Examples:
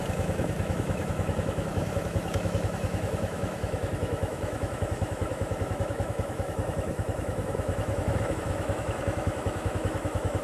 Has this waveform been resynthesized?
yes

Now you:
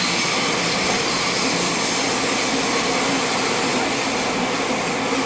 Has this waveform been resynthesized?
no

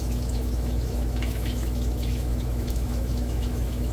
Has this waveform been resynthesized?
yes